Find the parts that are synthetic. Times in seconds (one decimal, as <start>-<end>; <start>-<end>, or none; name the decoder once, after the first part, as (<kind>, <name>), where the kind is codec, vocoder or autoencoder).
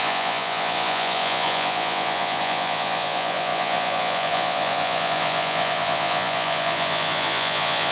0.0-7.9 (vocoder, Vocos)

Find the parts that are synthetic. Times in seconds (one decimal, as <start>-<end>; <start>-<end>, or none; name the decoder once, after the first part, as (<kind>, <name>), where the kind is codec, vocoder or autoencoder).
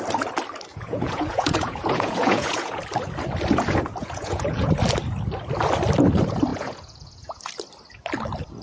0.7-2.8 (vocoder, Vocos); 4.0-4.7; 6.5-7.4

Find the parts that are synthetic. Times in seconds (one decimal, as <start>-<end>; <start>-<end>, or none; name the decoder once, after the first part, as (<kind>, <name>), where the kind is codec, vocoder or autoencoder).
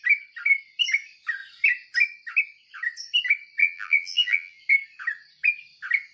3.6-4.6 (vocoder, BigVGAN v2)